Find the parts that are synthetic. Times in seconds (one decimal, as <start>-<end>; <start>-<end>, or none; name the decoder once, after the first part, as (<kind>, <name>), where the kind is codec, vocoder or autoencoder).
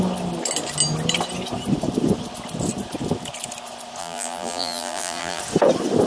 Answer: 4.0-5.4 (vocoder, BigVGAN v2)